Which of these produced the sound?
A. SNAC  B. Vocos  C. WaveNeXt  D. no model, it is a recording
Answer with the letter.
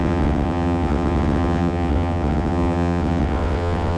C